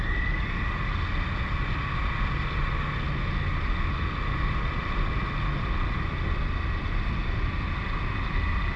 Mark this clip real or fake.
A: real